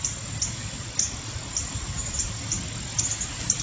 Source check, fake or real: real